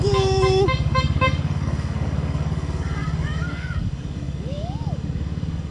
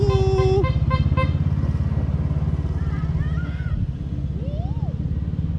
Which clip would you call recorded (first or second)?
second